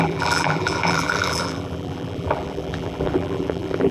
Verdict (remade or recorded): remade